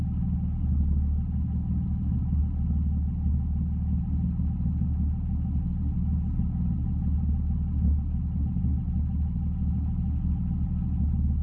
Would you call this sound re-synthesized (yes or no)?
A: no